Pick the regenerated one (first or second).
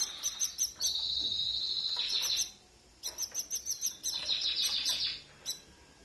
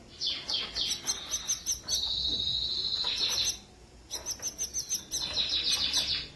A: first